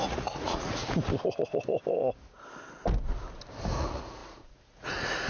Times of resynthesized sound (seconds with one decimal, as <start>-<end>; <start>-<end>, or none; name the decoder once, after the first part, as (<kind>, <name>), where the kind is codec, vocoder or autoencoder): 0.0-1.1 (vocoder, Vocos); 3.8-5.3

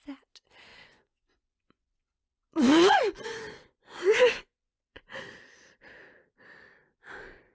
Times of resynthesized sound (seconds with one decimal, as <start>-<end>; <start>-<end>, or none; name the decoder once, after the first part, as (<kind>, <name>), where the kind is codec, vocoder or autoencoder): 0.7-5.2 (vocoder, Vocos)

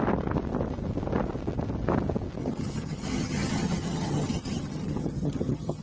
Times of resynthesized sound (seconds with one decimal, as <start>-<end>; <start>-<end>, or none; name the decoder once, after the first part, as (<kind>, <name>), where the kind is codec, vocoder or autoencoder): 2.4-5.8 (vocoder, HiFi-GAN)